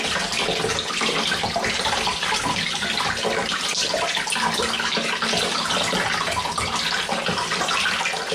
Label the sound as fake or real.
real